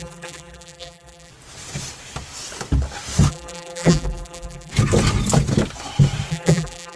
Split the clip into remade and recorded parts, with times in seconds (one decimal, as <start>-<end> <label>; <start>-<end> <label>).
0.0-1.3 remade; 1.3-3.3 recorded; 3.3-4.7 remade; 4.7-6.3 recorded; 6.3-7.0 remade